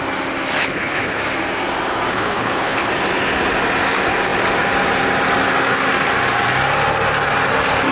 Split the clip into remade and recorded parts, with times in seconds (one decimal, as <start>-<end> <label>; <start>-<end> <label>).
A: 0.0-0.6 recorded; 0.6-1.2 remade; 1.2-2.1 recorded; 2.1-2.9 remade; 2.9-7.9 recorded